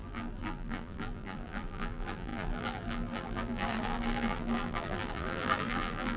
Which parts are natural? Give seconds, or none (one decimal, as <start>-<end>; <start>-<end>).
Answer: none

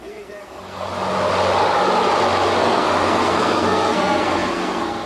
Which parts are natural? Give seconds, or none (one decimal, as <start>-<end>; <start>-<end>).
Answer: 0.9-2.6

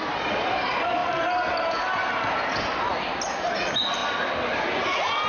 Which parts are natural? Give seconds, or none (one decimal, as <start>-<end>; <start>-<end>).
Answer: 0.0-5.3

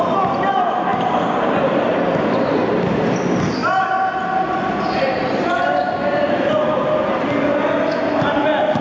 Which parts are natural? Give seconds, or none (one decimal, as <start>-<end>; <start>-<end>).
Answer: 0.0-0.9; 1.4-8.8

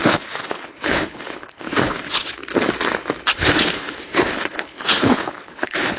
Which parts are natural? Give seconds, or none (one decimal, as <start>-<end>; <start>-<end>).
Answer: 2.3-3.3

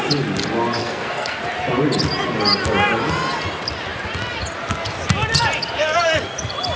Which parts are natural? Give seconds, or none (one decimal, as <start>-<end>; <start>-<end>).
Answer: 0.0-0.8; 1.4-6.8

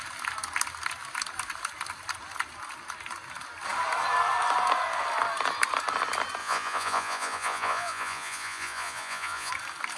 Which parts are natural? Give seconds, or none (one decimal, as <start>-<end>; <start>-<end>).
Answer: 0.0-6.4; 9.5-10.0